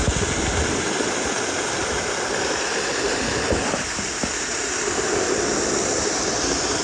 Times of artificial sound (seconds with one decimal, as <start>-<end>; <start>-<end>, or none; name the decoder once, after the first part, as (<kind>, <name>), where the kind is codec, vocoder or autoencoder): none